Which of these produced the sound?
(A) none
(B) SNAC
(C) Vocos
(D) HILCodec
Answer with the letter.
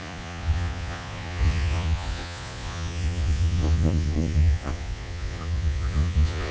C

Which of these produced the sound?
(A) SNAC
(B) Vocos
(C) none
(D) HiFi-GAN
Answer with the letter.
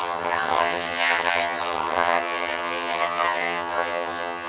D